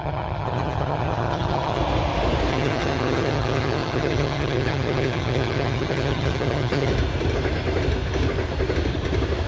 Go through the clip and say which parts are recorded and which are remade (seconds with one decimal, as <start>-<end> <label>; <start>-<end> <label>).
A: 0.0-1.8 remade; 1.8-2.5 recorded; 2.5-6.9 remade; 6.9-9.5 recorded